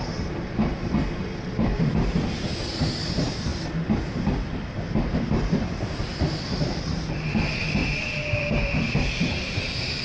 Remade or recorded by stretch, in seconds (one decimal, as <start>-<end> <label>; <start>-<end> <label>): 0.0-3.5 remade; 3.5-5.0 recorded; 5.0-7.8 remade; 7.8-8.4 recorded; 8.4-10.0 remade